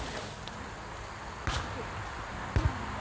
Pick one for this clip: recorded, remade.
recorded